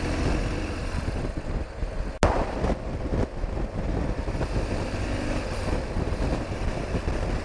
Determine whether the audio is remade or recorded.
recorded